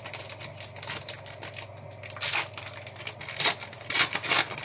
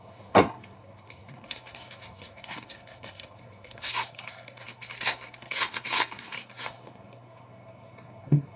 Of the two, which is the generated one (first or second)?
second